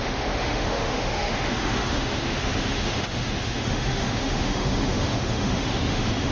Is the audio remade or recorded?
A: remade